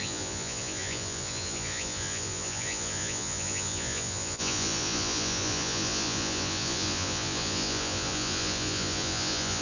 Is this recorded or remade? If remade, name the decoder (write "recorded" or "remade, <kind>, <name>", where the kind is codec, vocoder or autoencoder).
remade, vocoder, Vocos